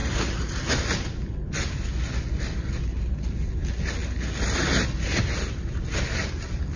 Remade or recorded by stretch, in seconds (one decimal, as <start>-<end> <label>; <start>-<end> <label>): 0.0-6.8 recorded